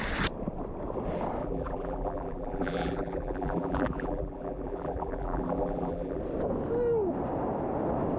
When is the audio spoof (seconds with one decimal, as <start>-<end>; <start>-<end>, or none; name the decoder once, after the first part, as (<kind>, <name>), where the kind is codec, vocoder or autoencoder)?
1.4-6.2 (vocoder, BigVGAN v2)